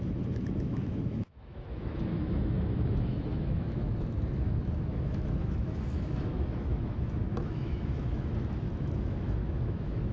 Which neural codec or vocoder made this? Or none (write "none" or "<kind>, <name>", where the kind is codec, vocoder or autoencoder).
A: autoencoder, DAC-VAE